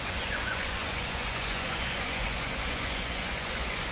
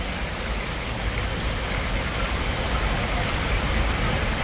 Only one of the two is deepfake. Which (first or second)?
first